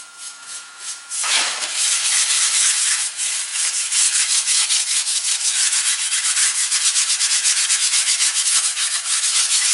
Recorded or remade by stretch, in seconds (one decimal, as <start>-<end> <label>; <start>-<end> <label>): 0.0-9.7 remade